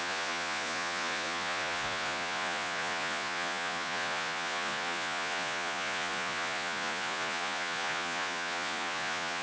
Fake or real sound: fake